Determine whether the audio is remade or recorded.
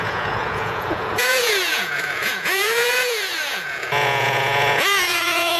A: remade